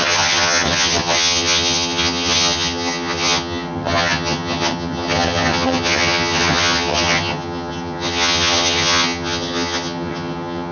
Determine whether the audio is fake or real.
fake